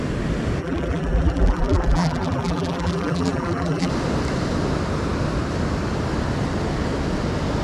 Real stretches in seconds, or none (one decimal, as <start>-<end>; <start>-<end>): 0.0-0.6; 3.9-7.6

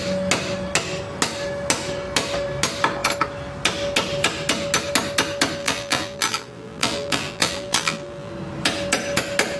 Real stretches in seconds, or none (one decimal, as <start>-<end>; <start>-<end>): 0.0-5.6; 8.3-9.6